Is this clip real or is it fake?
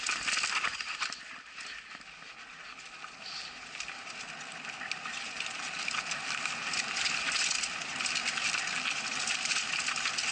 real